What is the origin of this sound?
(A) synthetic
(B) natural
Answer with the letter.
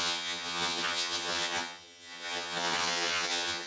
A